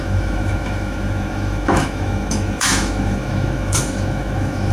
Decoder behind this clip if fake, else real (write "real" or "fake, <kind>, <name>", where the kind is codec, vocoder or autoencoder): fake, autoencoder, DAC-VAE